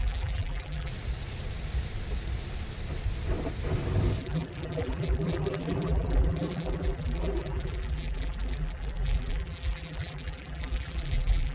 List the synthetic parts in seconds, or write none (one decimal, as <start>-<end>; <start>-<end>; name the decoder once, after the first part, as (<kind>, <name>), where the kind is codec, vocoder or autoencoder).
0.0-0.9 (vocoder, BigVGAN v2); 4.2-11.5